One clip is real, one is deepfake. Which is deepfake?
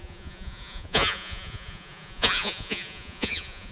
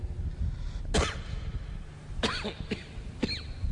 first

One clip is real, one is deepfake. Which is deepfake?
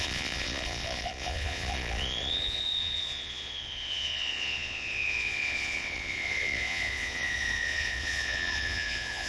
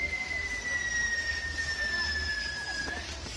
first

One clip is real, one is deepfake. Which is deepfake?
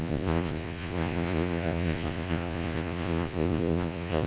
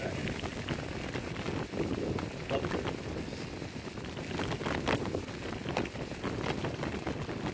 first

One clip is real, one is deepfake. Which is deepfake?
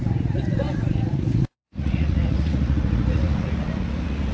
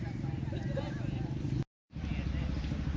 first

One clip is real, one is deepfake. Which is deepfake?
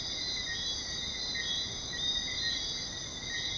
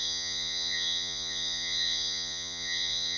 second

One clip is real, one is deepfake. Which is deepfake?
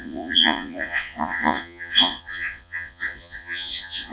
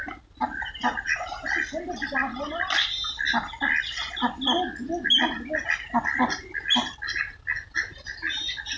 first